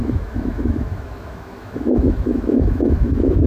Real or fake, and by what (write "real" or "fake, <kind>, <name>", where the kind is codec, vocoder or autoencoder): fake, autoencoder, DAC-VAE